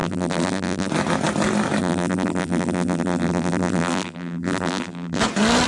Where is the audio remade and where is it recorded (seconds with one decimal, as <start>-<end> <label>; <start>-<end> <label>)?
0.0-0.9 remade; 0.9-1.8 recorded; 1.8-5.2 remade; 5.2-5.7 recorded